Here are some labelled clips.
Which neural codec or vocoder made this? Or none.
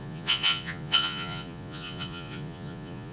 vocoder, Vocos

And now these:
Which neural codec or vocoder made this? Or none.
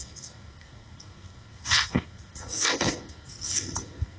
codec, SNAC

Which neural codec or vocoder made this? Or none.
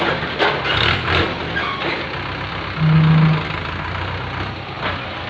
none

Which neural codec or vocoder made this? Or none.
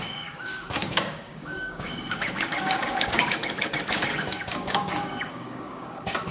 codec, DAC